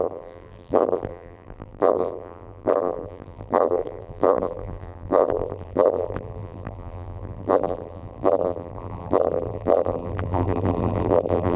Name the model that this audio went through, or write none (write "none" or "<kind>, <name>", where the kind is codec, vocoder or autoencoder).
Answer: vocoder, BigVGAN v2